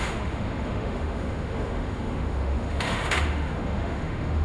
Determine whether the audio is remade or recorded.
remade